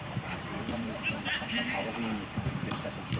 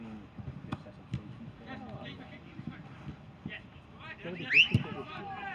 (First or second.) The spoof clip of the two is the first